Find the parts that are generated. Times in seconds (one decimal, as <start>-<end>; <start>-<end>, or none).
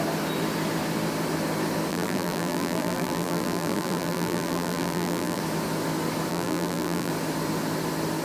1.9-5.4; 6.3-7.1